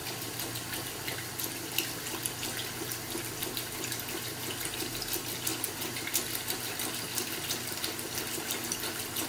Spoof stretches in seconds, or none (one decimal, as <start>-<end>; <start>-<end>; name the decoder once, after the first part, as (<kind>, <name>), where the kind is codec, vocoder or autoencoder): none

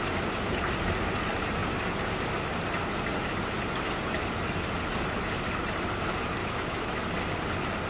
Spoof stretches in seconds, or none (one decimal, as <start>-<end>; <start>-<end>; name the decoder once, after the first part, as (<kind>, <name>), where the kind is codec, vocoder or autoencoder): 6.4-7.0 (autoencoder, DAC-VAE)

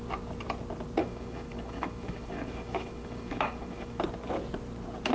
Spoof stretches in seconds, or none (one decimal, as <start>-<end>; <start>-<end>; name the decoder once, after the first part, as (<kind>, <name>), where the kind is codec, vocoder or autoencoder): 1.0-4.0 (autoencoder, DAC-VAE)

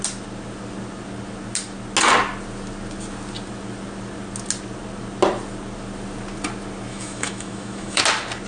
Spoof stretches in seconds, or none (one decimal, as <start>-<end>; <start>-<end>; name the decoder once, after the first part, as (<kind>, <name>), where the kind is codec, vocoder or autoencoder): 6.9-8.0 (autoencoder, DAC-VAE)

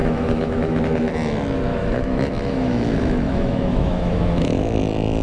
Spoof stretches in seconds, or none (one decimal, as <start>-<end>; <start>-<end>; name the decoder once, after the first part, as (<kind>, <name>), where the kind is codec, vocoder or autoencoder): 0.0-0.8 (autoencoder, DAC-VAE); 1.7-4.8

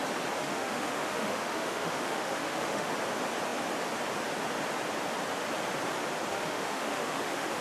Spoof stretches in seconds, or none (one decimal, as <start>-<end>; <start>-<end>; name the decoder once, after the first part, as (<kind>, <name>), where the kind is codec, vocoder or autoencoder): 0.4-2.9 (autoencoder, DAC-VAE); 6.3-7.6